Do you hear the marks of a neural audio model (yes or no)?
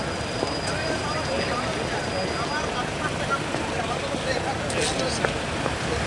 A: no